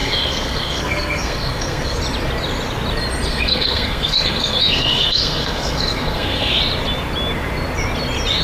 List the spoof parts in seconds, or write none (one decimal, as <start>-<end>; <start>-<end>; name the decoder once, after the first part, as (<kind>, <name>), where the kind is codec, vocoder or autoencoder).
0.0-2.0 (codec, SNAC); 3.3-6.6